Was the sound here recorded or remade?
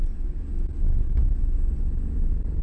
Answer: recorded